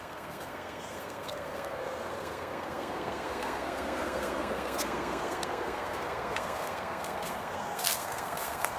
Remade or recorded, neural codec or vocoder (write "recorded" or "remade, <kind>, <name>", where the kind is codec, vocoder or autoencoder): remade, codec, SNAC